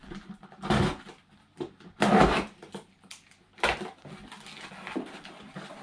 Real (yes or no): yes